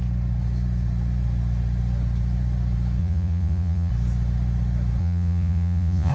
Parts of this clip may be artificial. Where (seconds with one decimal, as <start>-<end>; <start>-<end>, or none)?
3.0-3.9; 5.0-6.1